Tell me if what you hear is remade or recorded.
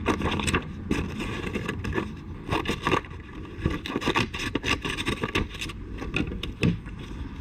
recorded